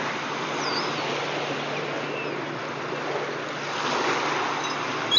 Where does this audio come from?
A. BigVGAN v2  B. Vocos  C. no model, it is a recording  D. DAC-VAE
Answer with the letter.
C